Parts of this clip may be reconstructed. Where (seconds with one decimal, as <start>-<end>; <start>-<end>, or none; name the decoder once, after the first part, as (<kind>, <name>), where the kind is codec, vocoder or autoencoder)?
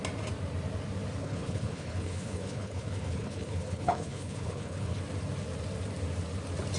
1.2-5.0 (codec, HILCodec)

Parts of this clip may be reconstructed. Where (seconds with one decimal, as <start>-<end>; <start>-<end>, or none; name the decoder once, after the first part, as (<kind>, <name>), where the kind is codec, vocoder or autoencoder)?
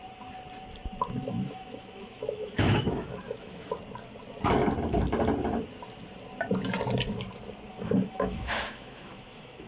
1.2-3.7 (autoencoder, DAC-VAE); 7.7-9.7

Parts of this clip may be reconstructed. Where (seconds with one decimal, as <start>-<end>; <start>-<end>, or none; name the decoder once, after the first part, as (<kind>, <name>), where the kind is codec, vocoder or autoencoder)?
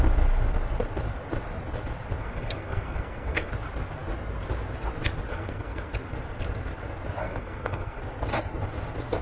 2.2-3.5 (codec, SNAC); 5.3-5.9; 7.2-8.0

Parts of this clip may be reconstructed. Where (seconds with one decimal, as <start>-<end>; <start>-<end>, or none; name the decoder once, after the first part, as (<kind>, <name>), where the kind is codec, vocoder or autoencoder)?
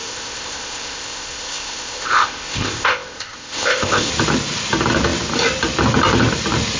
0.0-4.1 (codec, ZipCodec)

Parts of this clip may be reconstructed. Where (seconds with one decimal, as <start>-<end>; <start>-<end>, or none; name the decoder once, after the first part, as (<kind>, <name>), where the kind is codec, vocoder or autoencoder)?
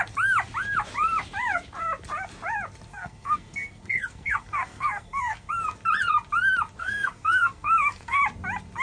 2.9-5.5 (codec, SNAC); 6.8-8.2